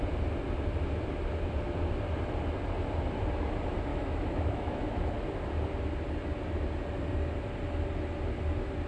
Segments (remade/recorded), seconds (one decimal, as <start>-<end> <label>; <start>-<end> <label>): 0.0-3.9 recorded; 3.9-5.1 remade; 5.1-8.9 recorded